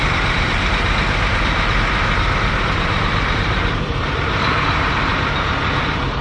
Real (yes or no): no